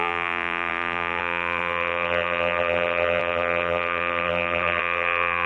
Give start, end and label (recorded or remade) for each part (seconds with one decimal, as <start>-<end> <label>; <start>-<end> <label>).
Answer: 0.0-5.5 remade